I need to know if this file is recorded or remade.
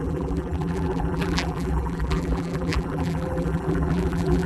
remade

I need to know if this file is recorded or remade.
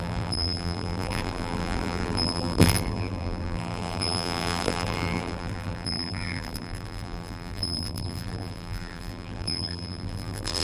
remade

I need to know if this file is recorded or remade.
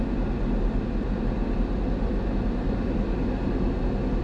recorded